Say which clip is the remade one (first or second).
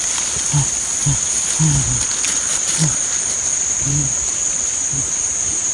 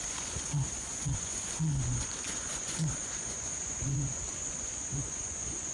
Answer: second